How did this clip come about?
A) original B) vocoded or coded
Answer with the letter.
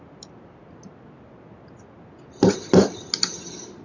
A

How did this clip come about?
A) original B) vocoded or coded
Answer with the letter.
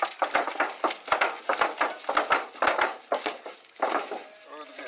A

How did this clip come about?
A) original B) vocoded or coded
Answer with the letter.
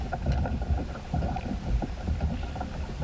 A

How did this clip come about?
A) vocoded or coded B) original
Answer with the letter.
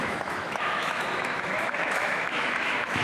A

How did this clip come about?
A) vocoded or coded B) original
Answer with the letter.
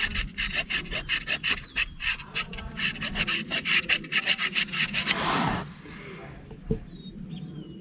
B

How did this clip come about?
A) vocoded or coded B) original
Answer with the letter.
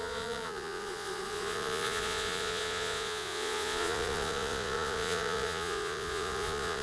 A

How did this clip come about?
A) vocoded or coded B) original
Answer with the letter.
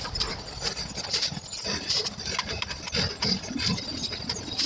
B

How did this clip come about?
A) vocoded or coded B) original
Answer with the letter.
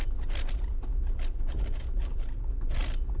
B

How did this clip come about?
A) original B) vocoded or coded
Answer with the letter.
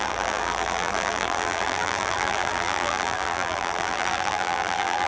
B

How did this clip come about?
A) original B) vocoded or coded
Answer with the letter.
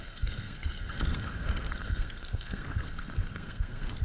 B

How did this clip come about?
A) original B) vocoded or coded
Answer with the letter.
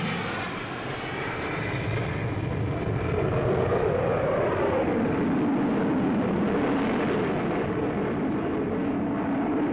A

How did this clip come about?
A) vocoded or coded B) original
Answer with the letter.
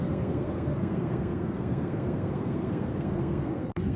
A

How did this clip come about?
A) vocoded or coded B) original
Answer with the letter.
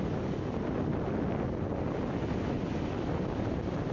B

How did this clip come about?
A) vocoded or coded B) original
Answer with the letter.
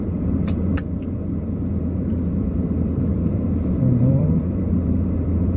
A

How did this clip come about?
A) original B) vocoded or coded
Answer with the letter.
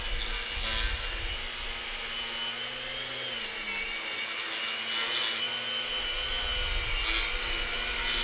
A